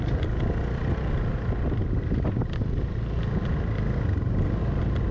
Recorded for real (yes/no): yes